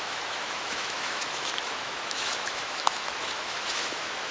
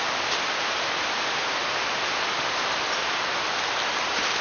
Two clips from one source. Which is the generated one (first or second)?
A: first